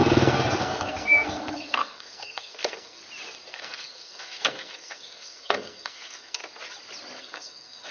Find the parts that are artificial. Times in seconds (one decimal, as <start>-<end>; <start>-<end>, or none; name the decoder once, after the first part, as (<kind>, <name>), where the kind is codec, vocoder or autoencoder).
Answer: 0.0-3.0 (codec, SNAC); 3.5-6.4; 7.2-7.9